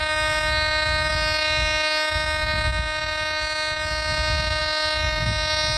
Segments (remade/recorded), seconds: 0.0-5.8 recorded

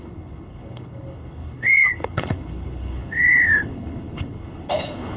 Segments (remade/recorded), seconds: 0.0-5.2 remade

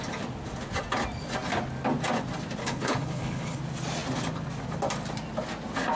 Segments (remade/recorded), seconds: 0.0-2.6 recorded; 2.6-3.6 remade; 3.6-5.9 recorded

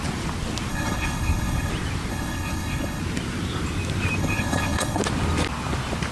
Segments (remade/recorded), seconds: 0.0-0.7 recorded; 0.7-1.7 remade; 1.7-2.1 recorded; 2.1-3.0 remade; 3.0-4.2 recorded; 4.2-5.0 remade; 5.0-6.1 recorded

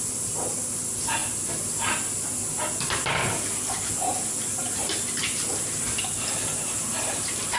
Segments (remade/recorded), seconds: 0.0-7.6 recorded

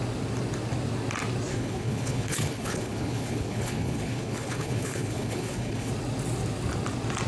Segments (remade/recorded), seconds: 0.0-1.5 recorded; 1.5-5.9 remade; 5.9-7.3 recorded